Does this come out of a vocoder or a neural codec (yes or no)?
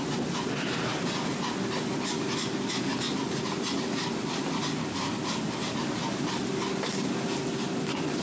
no